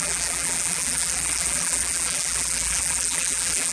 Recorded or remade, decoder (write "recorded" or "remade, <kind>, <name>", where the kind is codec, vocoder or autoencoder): remade, vocoder, BigVGAN v2